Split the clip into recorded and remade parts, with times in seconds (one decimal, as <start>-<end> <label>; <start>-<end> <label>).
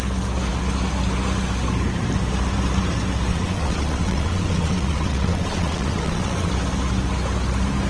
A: 0.0-3.3 recorded; 3.3-6.5 remade; 6.5-7.9 recorded